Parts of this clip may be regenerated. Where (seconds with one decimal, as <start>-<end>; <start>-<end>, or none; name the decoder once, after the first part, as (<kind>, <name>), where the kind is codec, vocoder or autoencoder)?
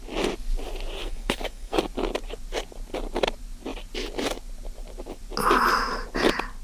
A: 1.0-1.8 (codec, SNAC)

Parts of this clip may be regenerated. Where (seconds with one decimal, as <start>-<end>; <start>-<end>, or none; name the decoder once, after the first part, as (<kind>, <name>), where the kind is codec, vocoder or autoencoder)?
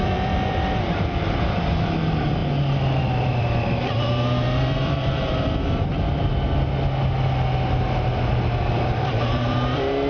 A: 0.0-2.4 (vocoder, BigVGAN v2); 3.0-6.1; 8.7-10.1